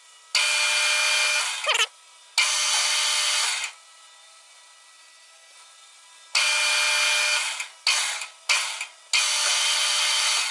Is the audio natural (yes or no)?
yes